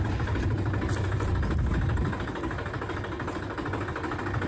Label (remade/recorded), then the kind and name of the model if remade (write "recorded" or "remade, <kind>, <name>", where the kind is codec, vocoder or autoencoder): recorded